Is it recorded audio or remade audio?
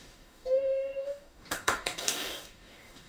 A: remade